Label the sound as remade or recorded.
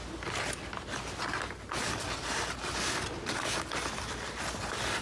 recorded